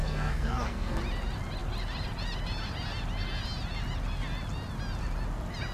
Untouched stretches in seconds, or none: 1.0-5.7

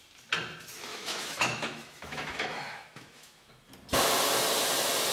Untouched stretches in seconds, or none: 0.0-0.9; 3.5-5.1